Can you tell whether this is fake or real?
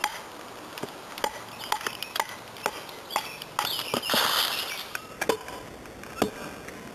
real